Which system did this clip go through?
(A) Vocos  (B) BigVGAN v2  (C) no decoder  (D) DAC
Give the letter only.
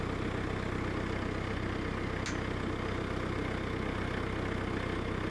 C